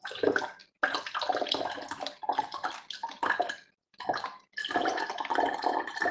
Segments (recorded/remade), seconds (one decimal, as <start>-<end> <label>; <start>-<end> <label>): 0.0-6.1 recorded